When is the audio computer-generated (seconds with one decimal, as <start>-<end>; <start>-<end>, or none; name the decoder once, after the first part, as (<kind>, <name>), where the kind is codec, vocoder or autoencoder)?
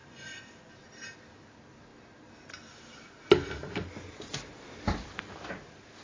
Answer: 0.0-0.7 (vocoder, Vocos)